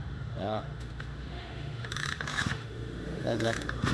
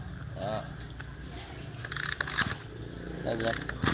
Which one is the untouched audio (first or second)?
second